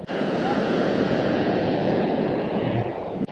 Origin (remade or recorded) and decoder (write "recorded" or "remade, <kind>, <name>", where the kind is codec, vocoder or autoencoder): remade, vocoder, Vocos